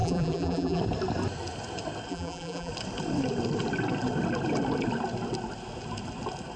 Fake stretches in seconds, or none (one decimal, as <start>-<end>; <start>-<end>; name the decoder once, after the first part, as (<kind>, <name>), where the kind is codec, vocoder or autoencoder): 0.0-0.8 (vocoder, BigVGAN v2); 2.1-2.7

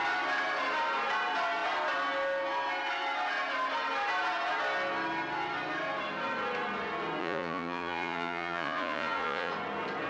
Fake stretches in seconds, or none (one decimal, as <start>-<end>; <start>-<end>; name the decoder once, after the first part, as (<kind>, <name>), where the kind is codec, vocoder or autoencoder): 7.2-9.5 (vocoder, Vocos)

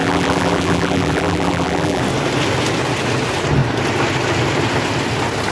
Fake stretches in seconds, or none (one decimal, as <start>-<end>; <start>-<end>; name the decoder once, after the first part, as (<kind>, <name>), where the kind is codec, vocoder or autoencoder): 0.0-2.0 (vocoder, BigVGAN v2)